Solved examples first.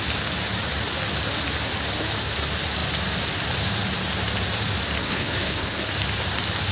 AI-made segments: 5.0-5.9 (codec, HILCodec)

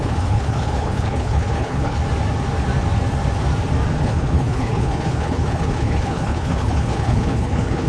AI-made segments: 0.0-2.0 (codec, HILCodec); 4.0-7.9

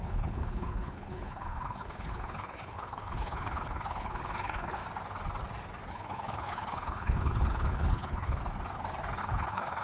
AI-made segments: 0.0-4.8 (codec, HILCodec); 5.9-8.4; 9.2-9.8

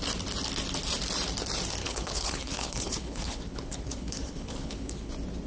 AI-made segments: 1.8-5.1 (codec, HILCodec)

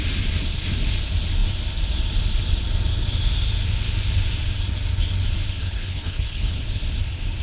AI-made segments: 5.6-6.6 (codec, HILCodec)